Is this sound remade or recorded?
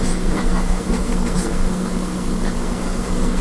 remade